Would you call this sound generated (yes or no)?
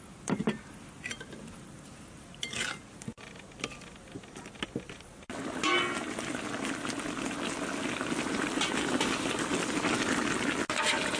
no